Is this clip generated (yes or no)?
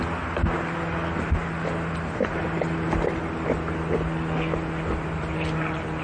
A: no